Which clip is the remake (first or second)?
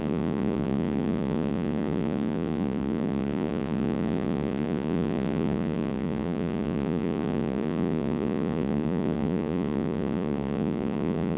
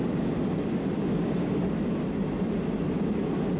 first